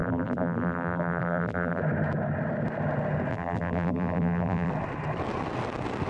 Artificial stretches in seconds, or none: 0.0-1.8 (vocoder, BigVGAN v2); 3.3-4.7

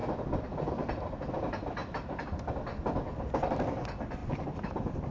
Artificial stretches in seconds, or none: 0.0-0.7 (vocoder, BigVGAN v2); 1.8-2.5; 4.2-5.1

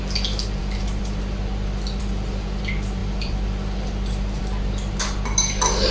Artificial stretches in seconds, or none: 0.6-2.0 (vocoder, BigVGAN v2); 3.0-4.4

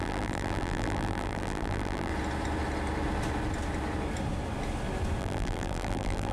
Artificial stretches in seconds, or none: 0.0-2.1 (vocoder, BigVGAN v2); 5.2-6.3

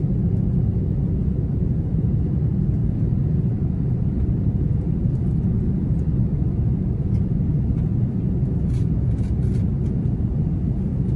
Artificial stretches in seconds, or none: 2.8-4.4 (vocoder, BigVGAN v2)